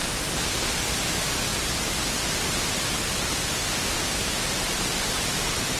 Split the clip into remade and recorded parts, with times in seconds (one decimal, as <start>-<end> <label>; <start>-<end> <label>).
0.0-5.8 recorded